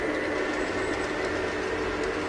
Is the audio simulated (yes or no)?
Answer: no